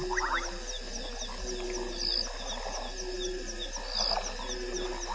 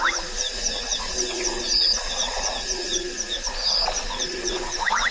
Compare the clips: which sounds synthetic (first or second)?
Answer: second